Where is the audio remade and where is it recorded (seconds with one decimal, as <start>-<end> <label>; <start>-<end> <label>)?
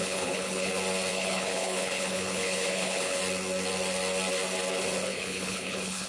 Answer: 0.0-0.7 remade; 0.7-1.1 recorded; 1.1-3.2 remade; 3.2-5.1 recorded; 5.1-6.1 remade